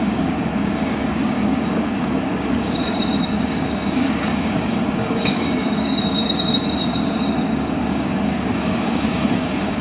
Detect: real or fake fake